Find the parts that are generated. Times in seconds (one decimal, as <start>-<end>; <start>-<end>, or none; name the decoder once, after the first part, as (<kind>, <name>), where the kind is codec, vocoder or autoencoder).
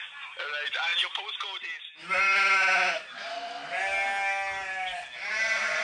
none